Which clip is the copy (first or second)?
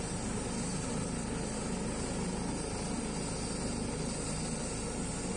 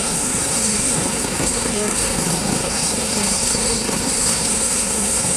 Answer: second